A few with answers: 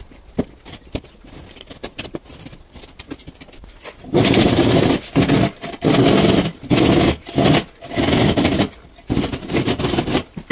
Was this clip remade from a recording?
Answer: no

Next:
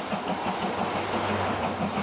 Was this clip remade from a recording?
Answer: no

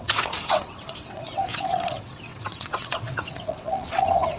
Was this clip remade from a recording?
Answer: yes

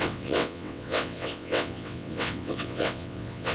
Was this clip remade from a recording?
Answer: yes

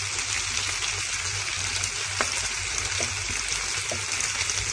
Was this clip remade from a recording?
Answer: no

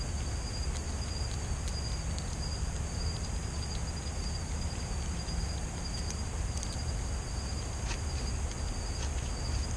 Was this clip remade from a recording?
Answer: no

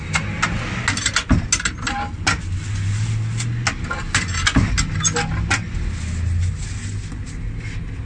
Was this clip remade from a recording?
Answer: no